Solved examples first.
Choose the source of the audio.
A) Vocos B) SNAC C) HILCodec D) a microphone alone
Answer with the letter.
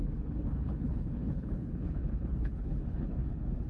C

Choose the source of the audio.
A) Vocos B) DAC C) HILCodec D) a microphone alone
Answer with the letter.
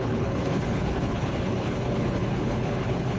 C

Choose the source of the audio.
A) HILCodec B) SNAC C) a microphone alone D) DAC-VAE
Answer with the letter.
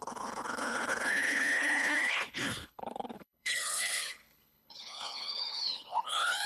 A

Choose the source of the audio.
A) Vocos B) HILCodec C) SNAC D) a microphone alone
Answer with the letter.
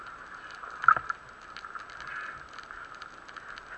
D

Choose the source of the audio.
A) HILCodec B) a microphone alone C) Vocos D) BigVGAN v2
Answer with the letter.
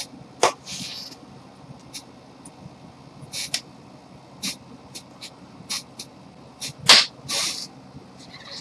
B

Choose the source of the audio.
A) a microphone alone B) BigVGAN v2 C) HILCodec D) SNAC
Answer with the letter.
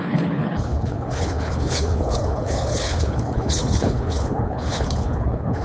C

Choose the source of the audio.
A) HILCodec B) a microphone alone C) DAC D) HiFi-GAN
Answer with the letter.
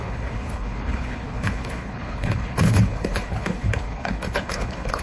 A